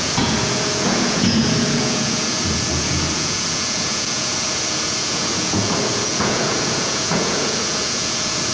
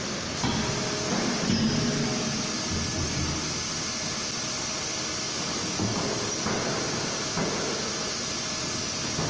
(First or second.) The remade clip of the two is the first